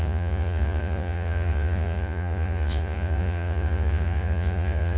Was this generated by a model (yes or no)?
yes